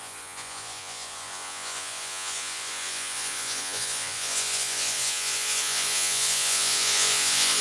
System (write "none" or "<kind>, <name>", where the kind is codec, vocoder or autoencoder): vocoder, Vocos